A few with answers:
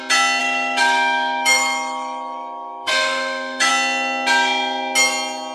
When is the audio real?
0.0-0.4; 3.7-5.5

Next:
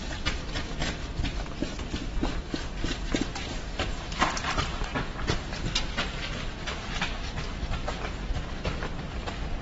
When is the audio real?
0.0-9.6

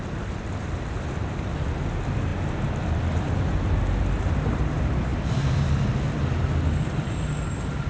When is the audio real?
0.0-7.9

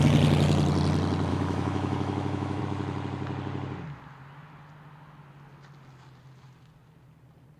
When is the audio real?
0.0-1.3; 2.6-7.6

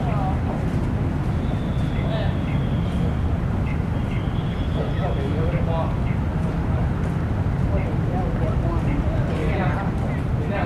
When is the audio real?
0.0-10.7

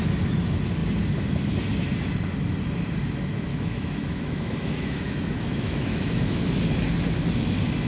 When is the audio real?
0.0-3.5; 6.4-7.9

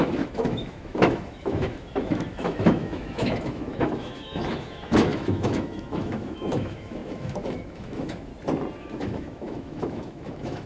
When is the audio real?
8.3-8.8